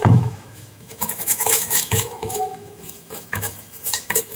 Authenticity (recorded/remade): remade